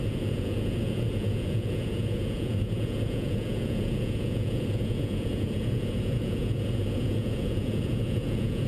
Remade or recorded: remade